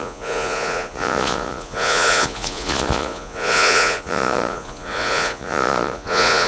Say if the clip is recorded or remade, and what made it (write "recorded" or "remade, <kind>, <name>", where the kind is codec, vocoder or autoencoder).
remade, vocoder, Vocos